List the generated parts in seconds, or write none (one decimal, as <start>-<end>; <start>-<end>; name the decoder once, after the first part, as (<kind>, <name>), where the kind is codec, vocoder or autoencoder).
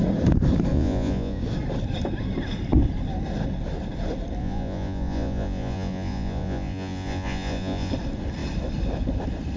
0.7-1.4 (vocoder, Vocos); 4.4-7.9